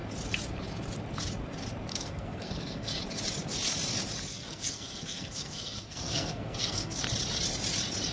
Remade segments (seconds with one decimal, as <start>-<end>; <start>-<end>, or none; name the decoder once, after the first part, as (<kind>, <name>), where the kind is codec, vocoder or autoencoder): 1.9-2.9 (codec, SNAC); 4.3-7.0